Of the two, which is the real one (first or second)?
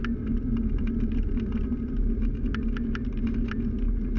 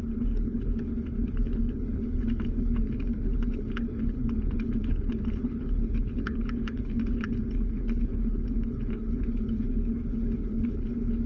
first